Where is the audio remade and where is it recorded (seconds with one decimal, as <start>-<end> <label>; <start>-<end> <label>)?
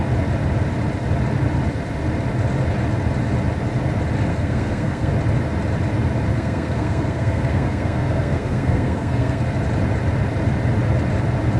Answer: 0.0-4.3 recorded; 4.3-5.1 remade; 5.1-6.3 recorded; 6.3-9.4 remade; 9.4-11.6 recorded